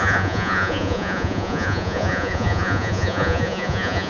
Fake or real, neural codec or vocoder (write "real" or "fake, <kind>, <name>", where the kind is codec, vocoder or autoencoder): fake, vocoder, Vocos